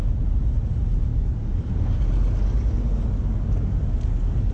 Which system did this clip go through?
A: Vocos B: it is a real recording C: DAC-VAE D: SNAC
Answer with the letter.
B